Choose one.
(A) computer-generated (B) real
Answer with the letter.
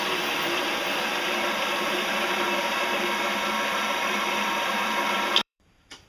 A